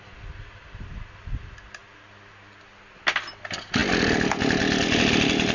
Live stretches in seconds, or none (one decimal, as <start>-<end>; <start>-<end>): 1.8-3.4; 3.8-4.4